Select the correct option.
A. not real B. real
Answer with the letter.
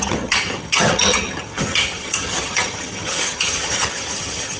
A